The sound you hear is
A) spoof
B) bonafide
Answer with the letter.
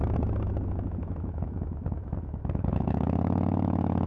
A